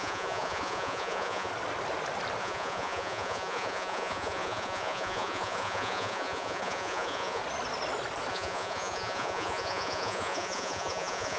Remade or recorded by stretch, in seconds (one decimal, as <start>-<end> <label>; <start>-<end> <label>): 0.0-1.5 remade; 1.5-2.4 recorded; 2.4-7.4 remade; 7.4-8.3 recorded; 8.3-11.4 remade